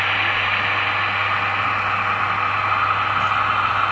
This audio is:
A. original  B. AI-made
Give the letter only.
A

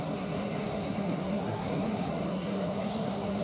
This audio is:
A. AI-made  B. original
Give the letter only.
A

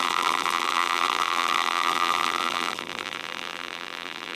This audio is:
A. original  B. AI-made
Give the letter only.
B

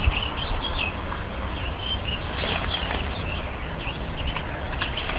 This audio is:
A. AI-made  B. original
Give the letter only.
B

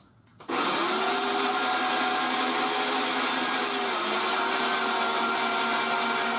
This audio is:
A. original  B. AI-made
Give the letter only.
A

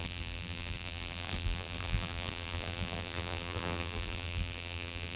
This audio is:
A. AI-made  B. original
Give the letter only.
A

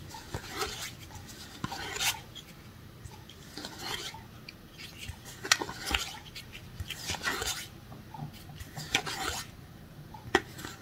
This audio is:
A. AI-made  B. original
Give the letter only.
B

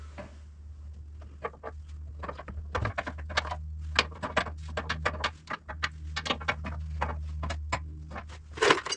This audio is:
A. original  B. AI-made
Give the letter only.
A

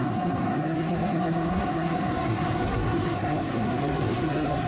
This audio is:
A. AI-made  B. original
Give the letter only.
A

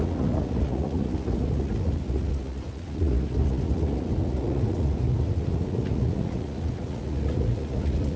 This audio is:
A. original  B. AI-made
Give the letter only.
B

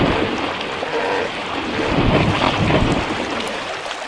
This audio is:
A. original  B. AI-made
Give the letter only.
A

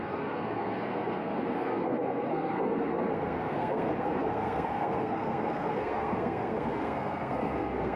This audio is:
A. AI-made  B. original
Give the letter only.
A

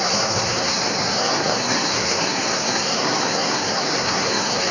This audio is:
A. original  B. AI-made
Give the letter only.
B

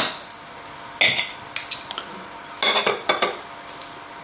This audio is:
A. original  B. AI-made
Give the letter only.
A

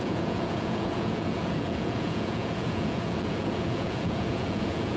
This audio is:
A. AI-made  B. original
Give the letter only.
A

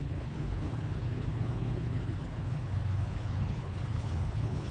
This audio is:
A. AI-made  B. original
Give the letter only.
A